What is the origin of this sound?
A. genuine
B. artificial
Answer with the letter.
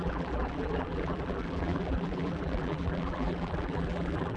B